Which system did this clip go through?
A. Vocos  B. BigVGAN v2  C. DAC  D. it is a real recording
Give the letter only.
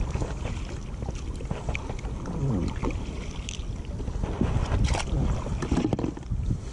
D